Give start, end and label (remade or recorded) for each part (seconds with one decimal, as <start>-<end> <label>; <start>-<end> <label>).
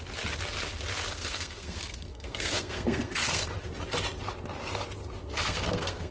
0.0-1.1 recorded; 1.1-3.5 remade; 3.5-5.2 recorded; 5.2-6.1 remade